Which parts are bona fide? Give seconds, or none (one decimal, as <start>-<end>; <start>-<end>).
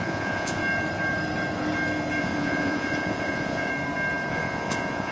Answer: 0.6-2.2; 3.7-4.3